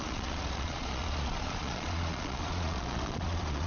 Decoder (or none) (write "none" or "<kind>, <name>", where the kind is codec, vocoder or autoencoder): vocoder, Vocos